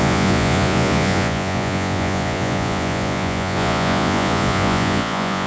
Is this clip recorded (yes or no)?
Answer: no